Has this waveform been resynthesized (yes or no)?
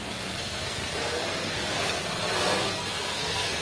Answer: yes